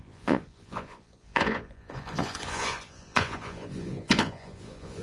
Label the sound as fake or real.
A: fake